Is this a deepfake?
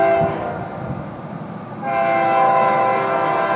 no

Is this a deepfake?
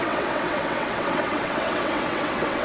yes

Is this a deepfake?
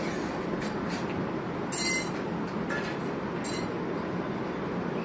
no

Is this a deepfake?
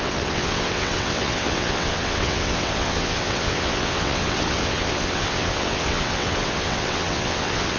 yes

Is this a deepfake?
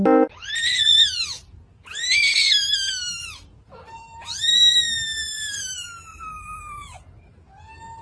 no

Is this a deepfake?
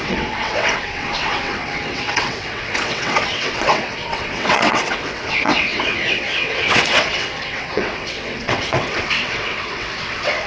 yes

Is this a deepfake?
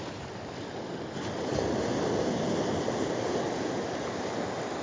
no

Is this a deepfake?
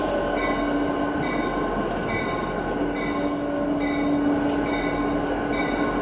no